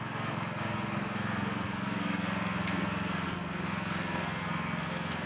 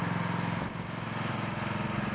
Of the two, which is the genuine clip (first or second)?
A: second